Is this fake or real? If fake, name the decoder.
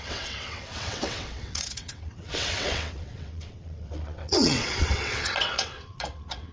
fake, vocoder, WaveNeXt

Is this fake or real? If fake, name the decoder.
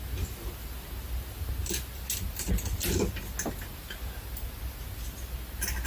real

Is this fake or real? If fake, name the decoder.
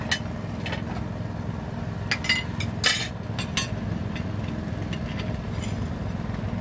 real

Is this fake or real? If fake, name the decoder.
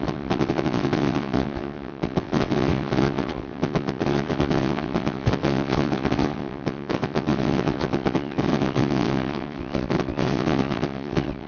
fake, vocoder, WaveNeXt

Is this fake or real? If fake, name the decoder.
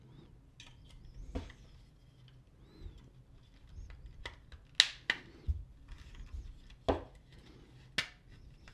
real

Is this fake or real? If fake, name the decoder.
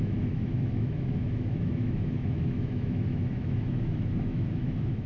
fake, autoencoder, DAC-VAE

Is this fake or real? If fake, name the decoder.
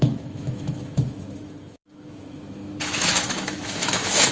fake, autoencoder, DAC-VAE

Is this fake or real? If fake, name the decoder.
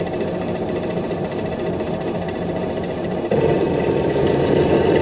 fake, vocoder, BigVGAN v2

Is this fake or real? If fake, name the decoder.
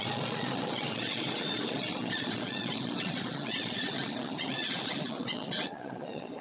fake, vocoder, Vocos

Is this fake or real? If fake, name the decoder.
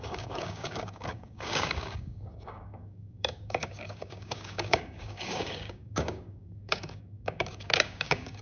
fake, codec, DAC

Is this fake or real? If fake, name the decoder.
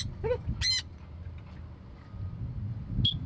real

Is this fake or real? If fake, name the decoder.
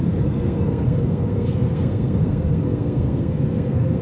fake, codec, SNAC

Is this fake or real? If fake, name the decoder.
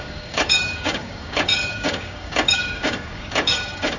fake, codec, DAC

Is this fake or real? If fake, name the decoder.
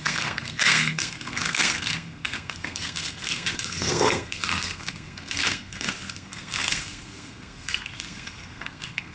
fake, codec, SNAC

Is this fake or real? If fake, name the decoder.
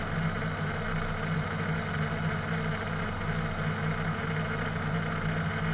real